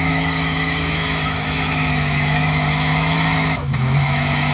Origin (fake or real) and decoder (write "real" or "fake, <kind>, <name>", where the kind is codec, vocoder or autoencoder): fake, autoencoder, DAC-VAE